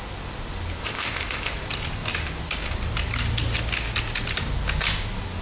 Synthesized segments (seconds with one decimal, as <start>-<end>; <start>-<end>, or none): 0.8-1.5